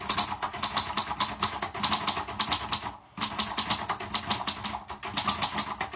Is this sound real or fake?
real